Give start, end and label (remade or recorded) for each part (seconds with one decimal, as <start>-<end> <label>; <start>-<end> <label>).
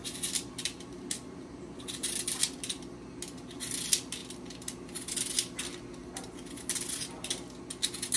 0.0-2.8 remade; 2.8-8.2 recorded